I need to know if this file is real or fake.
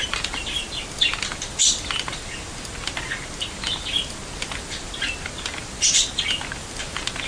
fake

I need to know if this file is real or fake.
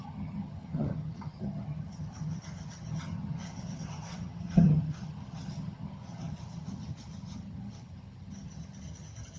fake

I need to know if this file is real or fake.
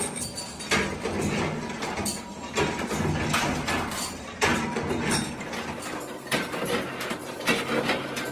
real